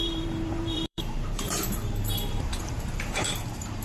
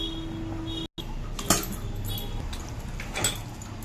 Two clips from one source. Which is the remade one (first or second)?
first